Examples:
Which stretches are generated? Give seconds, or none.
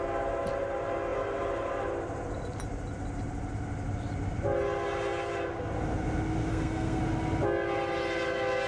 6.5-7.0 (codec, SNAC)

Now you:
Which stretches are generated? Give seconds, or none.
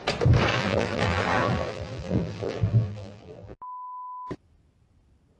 0.5-3.6 (vocoder, BigVGAN v2)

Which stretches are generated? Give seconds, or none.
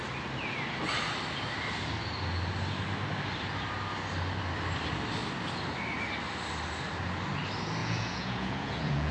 7.8-9.1 (vocoder, Vocos)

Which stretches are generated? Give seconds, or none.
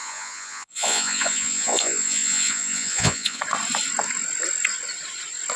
0.0-3.4 (vocoder, Vocos)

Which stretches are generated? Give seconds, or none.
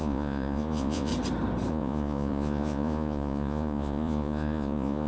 0.0-1.1 (vocoder, Vocos); 1.7-5.1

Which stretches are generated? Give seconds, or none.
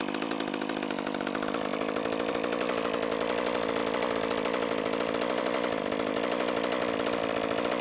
1.7-2.3 (vocoder, BigVGAN v2); 3.8-6.1